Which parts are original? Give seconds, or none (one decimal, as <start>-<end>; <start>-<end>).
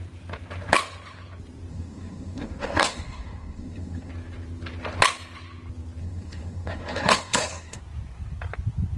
0.0-1.7; 4.1-6.0; 7.8-9.0